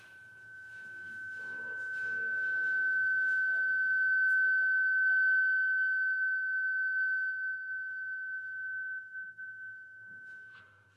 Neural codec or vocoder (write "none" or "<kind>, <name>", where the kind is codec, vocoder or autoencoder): autoencoder, DAC-VAE